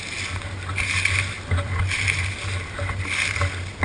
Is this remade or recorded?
recorded